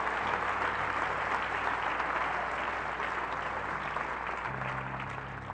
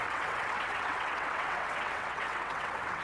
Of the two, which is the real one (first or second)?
first